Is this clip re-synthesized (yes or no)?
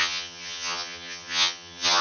yes